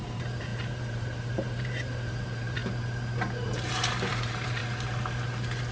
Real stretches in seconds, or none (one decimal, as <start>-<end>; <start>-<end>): 2.6-4.1; 4.6-5.7